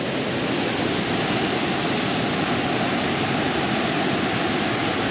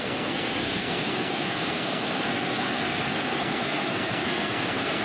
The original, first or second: first